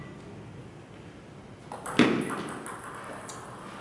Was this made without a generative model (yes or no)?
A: yes